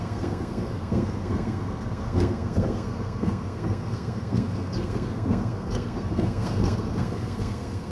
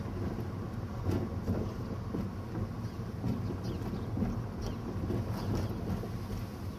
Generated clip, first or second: first